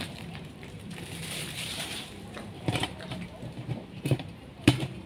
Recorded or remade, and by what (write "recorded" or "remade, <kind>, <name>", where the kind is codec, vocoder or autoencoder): remade, vocoder, BigVGAN v2